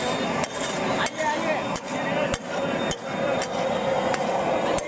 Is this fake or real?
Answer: real